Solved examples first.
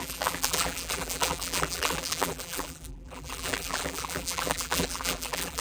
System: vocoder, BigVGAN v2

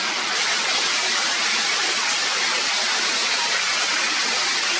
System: none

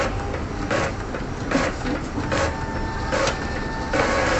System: none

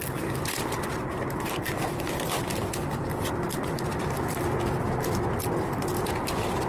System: none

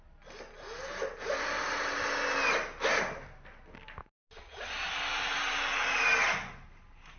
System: none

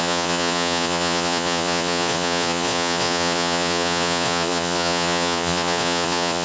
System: vocoder, Vocos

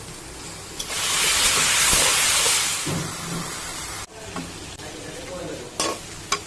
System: none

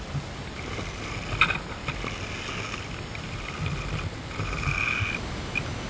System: none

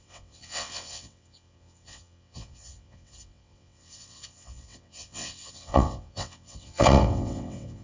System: vocoder, WaveNeXt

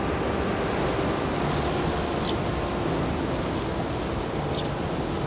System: none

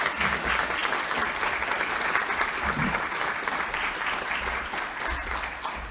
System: none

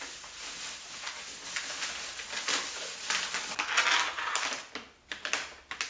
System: none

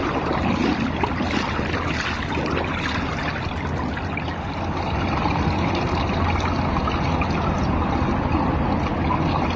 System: none